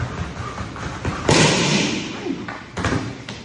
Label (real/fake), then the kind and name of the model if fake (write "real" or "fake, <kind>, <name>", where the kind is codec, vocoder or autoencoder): real